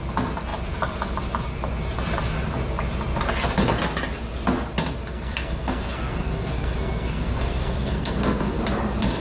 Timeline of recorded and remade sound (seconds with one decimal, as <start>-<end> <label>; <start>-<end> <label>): 0.0-5.1 recorded; 5.1-8.6 remade; 8.6-9.2 recorded